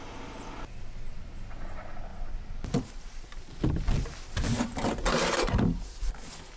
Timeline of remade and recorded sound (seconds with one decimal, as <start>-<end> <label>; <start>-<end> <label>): 0.0-2.1 recorded; 2.1-6.1 remade; 6.1-6.6 recorded